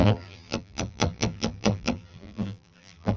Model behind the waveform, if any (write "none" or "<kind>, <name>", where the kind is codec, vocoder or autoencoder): vocoder, BigVGAN v2